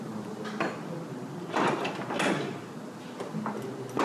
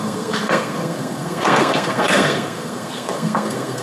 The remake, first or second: second